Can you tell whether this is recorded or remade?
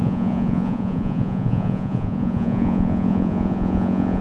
remade